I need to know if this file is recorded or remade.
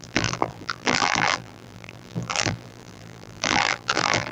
remade